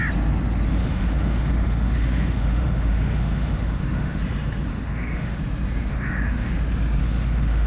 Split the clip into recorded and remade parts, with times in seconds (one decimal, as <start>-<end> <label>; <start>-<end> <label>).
0.0-0.7 recorded; 0.7-4.2 remade; 4.2-4.7 recorded; 4.7-5.4 remade; 5.4-5.9 recorded; 5.9-6.5 remade; 6.5-7.0 recorded; 7.0-7.7 remade